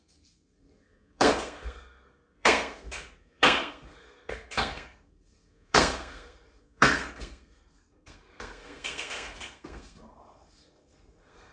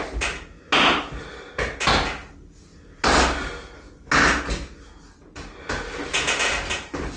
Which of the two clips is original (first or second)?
second